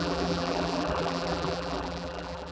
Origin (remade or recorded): remade